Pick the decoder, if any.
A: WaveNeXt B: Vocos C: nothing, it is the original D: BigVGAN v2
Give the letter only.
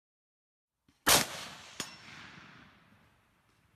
C